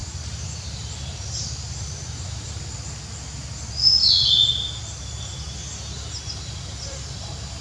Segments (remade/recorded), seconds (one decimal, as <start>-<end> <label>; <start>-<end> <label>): 0.0-2.6 remade; 2.6-7.6 recorded